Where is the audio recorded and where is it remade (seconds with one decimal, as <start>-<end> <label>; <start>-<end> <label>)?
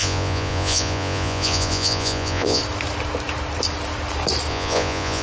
0.0-2.6 remade; 2.6-4.5 recorded; 4.5-5.2 remade